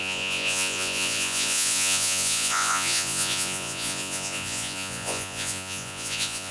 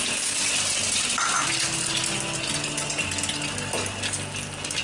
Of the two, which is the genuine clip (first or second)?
second